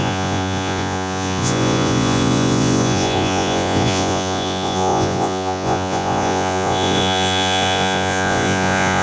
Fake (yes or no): yes